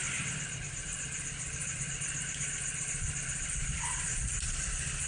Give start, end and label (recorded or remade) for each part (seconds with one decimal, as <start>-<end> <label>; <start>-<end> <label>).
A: 0.0-0.6 recorded; 0.6-5.1 remade